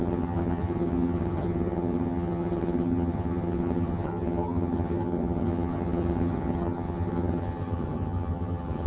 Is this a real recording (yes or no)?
no